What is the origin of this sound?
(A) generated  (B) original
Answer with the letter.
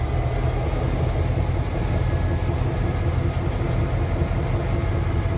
B